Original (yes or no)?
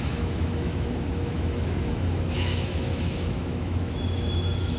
no